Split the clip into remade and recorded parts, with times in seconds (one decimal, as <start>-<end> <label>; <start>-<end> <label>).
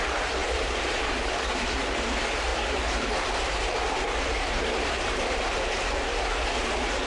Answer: 0.0-0.4 recorded; 0.4-1.2 remade; 1.2-2.5 recorded; 2.5-5.9 remade; 5.9-7.1 recorded